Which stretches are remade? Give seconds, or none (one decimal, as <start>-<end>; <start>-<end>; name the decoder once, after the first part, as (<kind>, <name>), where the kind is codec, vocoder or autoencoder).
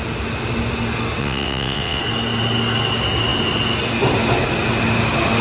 1.2-2.0 (vocoder, WaveNeXt)